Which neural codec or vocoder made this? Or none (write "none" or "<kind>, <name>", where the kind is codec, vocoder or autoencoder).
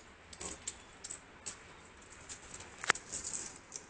none